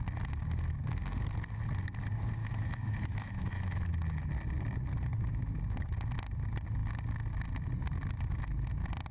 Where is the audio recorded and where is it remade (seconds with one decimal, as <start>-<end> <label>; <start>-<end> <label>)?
0.0-2.4 recorded; 2.4-3.8 remade; 3.8-5.1 recorded; 5.1-5.6 remade; 5.6-9.1 recorded